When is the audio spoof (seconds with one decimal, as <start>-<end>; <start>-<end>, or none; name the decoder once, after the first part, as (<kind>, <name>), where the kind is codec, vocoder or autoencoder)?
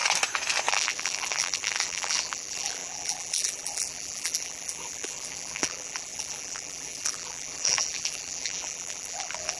0.7-9.6 (vocoder, BigVGAN v2)